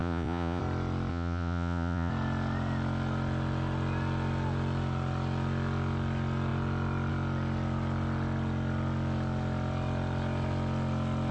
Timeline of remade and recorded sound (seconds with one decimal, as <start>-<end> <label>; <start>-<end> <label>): 0.0-0.6 remade; 0.6-1.1 recorded; 1.1-2.1 remade; 2.1-11.3 recorded